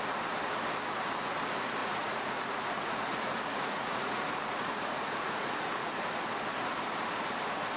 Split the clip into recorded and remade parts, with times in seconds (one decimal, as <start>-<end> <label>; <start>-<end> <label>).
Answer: 0.0-1.8 recorded; 1.8-5.9 remade; 5.9-7.8 recorded